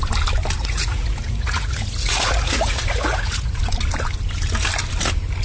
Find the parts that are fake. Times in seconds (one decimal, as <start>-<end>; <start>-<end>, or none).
0.6-3.6